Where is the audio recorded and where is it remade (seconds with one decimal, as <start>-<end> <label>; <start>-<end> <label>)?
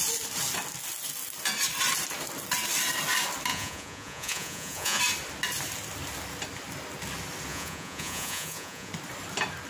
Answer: 0.0-3.5 recorded; 3.5-5.0 remade; 5.0-7.5 recorded; 7.5-8.9 remade; 8.9-9.7 recorded